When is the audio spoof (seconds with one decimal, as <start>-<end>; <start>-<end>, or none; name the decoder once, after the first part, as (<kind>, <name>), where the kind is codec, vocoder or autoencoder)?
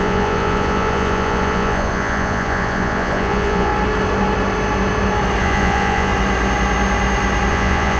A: 0.0-3.7 (vocoder, Vocos); 5.4-6.1; 7.5-8.0